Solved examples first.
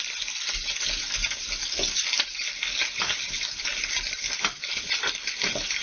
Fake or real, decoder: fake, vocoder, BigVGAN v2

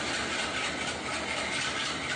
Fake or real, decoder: real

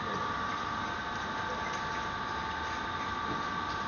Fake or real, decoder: real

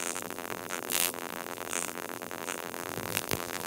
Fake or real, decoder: fake, vocoder, BigVGAN v2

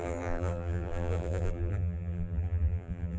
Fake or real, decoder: fake, vocoder, BigVGAN v2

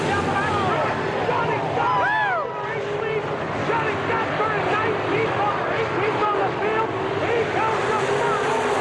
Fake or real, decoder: real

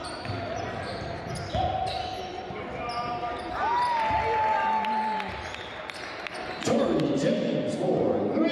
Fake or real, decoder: real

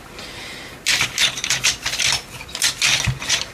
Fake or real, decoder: real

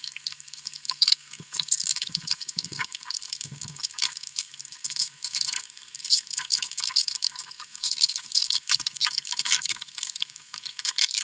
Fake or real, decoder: fake, codec, SNAC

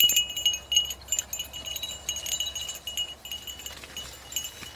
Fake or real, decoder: real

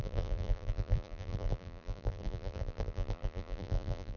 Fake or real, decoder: fake, vocoder, BigVGAN v2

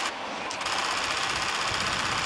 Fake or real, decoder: real